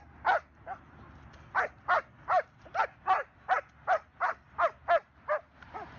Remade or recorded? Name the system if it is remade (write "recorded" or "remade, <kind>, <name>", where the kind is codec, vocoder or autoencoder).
recorded